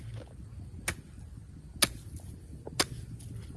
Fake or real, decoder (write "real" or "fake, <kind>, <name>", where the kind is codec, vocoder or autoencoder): real